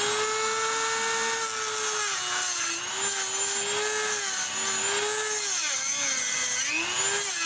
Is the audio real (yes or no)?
yes